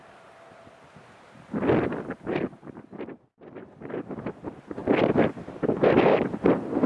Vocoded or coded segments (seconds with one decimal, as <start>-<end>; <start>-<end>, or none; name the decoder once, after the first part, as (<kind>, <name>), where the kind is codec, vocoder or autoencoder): none